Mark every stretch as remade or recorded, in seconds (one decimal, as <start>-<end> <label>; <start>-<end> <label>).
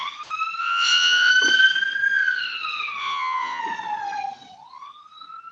0.0-0.6 recorded; 0.6-1.3 remade; 1.3-3.0 recorded; 3.0-3.6 remade; 3.6-5.5 recorded